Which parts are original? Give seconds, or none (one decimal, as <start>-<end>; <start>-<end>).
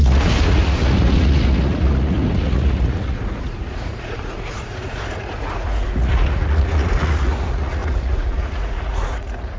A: none